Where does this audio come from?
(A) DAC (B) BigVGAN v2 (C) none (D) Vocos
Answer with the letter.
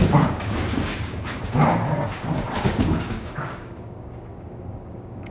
A